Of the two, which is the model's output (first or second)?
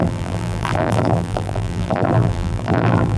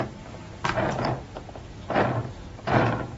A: first